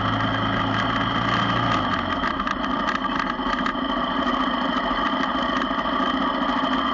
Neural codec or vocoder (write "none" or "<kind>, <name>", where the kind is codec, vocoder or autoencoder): none